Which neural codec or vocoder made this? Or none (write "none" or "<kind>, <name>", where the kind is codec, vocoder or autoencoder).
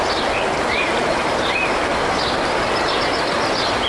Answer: none